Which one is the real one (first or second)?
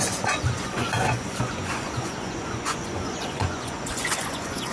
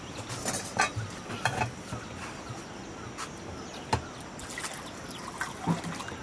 second